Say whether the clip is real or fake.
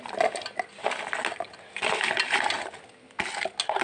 real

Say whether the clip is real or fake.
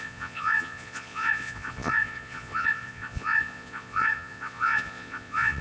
fake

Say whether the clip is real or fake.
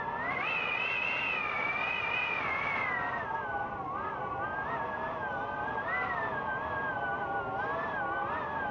real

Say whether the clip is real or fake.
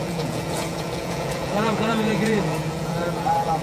fake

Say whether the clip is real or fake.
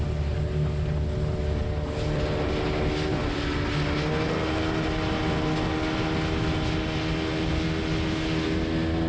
real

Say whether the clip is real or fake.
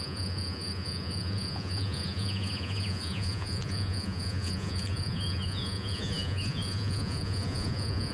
fake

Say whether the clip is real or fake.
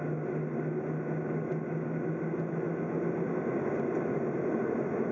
real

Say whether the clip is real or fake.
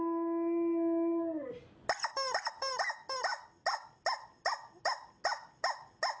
real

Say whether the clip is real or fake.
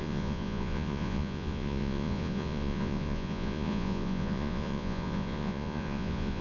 fake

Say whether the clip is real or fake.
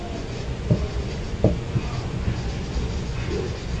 fake